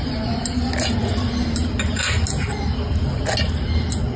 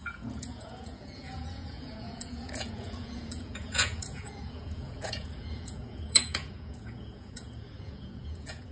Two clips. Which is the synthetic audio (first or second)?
second